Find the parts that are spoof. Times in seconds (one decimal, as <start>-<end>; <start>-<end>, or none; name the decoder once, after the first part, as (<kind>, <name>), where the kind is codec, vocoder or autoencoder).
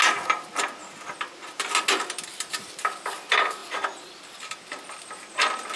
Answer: none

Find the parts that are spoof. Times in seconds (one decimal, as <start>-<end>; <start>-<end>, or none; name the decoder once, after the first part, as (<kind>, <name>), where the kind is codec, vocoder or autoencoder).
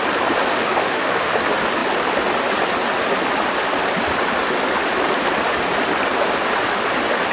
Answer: 0.5-1.4 (autoencoder, DAC-VAE)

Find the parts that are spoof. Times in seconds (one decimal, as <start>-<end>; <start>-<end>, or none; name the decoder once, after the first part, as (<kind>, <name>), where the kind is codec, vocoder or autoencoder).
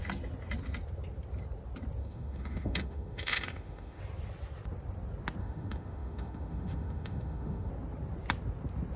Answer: 2.0-4.0 (autoencoder, DAC-VAE); 5.4-7.7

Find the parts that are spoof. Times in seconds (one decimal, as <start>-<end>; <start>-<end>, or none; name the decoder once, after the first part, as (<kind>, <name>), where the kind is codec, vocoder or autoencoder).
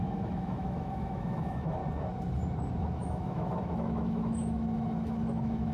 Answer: 0.0-1.8 (autoencoder, DAC-VAE); 2.8-5.7